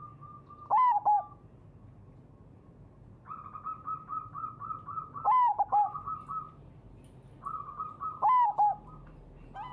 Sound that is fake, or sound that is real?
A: real